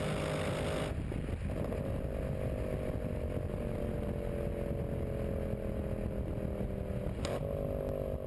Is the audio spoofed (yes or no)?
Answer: no